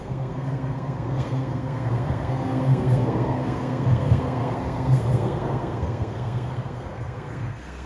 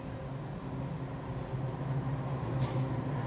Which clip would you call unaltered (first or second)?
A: second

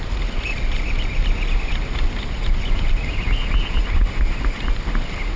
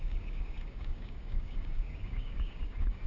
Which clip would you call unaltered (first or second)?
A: first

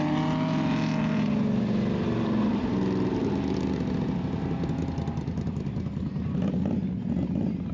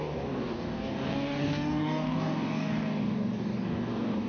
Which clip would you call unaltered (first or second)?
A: first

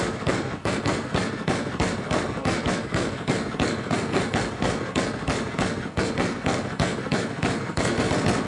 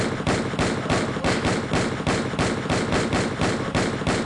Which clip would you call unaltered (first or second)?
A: second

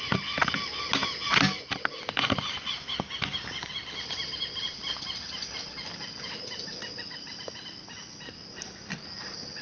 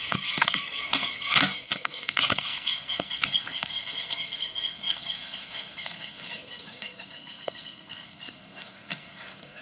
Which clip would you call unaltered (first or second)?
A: first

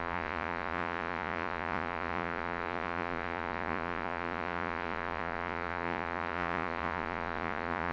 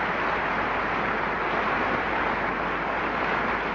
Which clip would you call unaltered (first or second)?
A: second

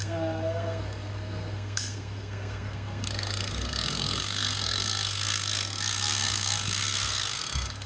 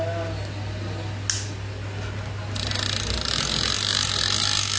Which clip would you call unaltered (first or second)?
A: second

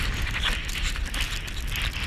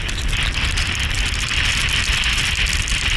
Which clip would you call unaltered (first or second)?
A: first